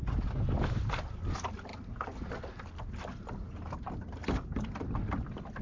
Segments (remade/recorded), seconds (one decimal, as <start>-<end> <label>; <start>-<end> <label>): 0.0-5.6 recorded